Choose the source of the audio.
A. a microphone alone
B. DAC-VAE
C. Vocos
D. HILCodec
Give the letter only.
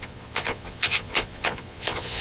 C